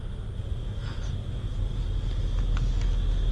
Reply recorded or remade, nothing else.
recorded